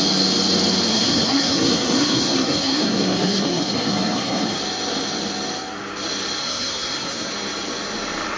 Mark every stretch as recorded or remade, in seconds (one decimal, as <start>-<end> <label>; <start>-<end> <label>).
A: 0.0-0.9 recorded; 0.9-4.6 remade; 4.6-6.4 recorded; 6.4-7.3 remade; 7.3-8.4 recorded

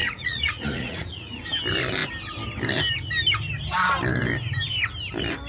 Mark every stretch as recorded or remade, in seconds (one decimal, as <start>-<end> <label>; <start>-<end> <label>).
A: 0.0-1.4 remade; 1.4-5.5 recorded

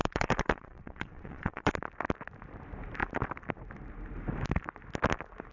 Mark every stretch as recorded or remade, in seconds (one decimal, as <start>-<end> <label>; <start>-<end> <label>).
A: 0.0-1.7 remade; 1.7-5.5 recorded